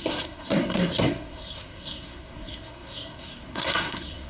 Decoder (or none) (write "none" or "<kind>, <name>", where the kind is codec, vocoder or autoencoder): codec, SNAC